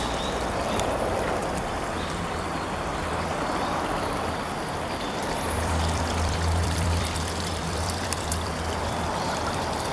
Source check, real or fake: fake